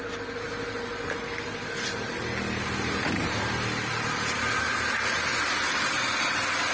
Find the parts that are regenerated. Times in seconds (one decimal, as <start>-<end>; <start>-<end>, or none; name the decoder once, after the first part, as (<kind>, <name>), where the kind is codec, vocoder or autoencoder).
none